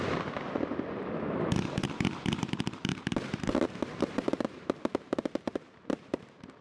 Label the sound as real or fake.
fake